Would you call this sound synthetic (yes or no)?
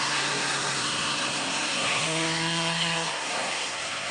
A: yes